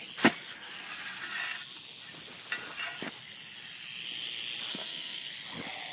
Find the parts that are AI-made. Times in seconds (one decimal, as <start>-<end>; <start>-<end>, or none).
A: 4.7-5.3